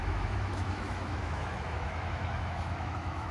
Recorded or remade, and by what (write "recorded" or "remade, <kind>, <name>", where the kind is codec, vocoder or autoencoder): remade, autoencoder, DAC-VAE